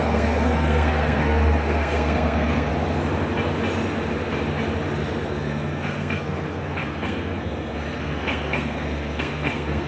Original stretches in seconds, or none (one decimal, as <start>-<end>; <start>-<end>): 2.7-5.3